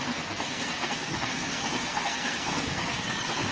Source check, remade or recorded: remade